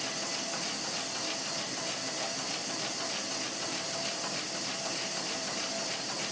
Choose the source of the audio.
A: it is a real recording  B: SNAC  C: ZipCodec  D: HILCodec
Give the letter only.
A